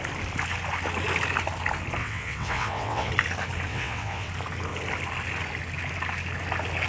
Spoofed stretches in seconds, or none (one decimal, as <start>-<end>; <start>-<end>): 2.0-3.1; 3.7-4.3